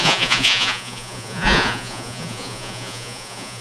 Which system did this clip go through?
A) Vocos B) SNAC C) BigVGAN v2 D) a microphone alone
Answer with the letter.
A